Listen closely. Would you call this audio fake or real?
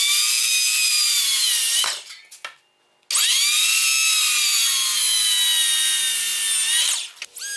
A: real